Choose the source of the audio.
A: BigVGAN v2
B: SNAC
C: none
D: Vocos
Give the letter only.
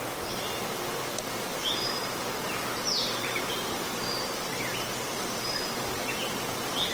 C